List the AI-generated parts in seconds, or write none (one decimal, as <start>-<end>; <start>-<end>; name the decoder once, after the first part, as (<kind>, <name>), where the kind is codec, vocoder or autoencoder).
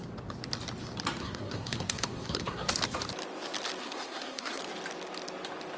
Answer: 1.2-2.7 (codec, SNAC); 3.8-4.6